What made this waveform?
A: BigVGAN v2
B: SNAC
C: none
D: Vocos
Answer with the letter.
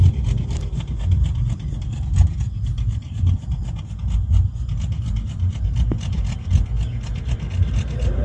C